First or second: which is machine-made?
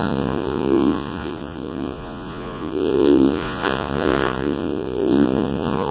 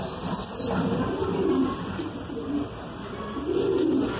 first